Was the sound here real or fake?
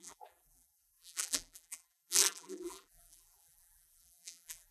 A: fake